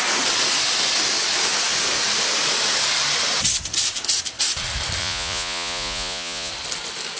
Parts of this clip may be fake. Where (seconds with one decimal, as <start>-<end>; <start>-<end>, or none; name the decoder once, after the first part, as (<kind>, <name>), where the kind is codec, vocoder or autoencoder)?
5.0-6.5 (vocoder, Vocos)